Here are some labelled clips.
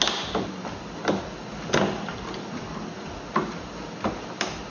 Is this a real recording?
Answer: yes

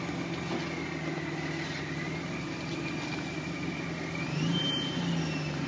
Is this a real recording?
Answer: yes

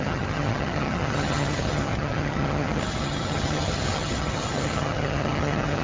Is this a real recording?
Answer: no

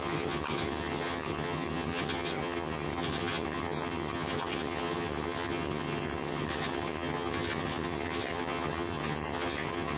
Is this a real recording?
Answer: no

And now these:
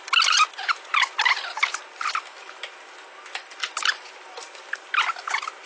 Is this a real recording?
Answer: yes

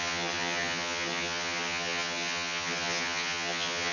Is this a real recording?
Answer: no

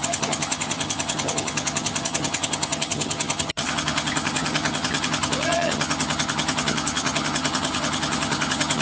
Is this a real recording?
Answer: no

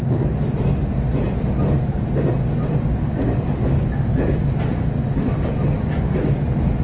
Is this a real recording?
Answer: yes